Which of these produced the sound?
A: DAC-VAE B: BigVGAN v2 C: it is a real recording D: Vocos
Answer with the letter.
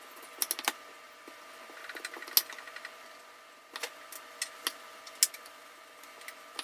C